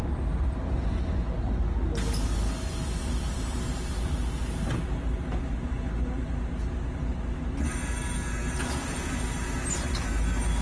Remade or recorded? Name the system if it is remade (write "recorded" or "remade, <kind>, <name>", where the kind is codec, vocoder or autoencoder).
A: recorded